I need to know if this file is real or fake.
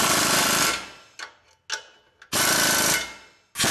real